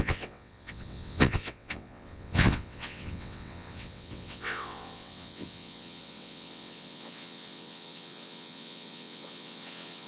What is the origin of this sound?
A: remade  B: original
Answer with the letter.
A